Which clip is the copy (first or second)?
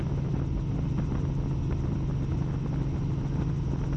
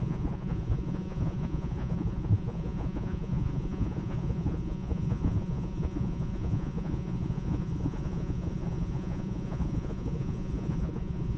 second